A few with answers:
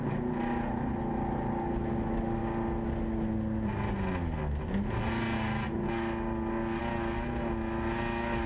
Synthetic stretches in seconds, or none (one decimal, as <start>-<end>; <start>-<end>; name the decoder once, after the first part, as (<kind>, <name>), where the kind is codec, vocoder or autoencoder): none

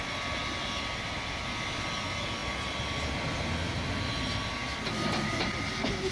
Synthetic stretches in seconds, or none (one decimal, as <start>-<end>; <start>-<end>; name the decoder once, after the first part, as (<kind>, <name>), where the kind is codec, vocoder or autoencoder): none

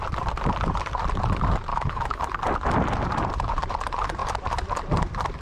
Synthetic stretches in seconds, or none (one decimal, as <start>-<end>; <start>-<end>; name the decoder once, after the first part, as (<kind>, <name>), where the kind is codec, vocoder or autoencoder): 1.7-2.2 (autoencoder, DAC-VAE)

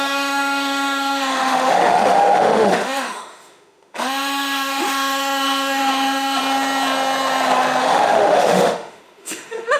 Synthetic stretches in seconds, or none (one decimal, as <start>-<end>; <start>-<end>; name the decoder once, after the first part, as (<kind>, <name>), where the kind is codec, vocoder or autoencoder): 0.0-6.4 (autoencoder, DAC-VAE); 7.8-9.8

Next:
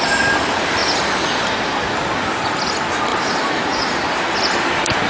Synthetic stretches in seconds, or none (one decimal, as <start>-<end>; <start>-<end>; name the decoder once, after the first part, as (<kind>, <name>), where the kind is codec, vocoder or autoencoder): 3.1-4.0 (vocoder, BigVGAN v2)